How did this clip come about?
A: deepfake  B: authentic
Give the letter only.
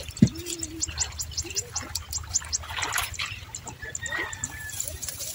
B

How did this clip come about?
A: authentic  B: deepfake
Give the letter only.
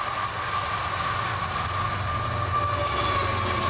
A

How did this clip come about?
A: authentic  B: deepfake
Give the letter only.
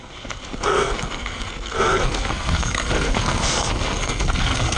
B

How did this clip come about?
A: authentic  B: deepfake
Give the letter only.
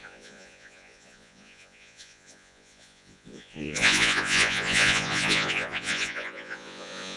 B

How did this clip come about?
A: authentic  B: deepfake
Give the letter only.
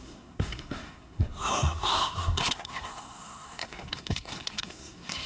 B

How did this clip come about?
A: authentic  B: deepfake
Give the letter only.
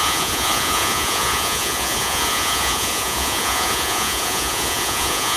B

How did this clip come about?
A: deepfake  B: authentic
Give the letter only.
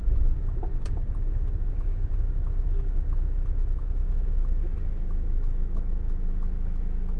A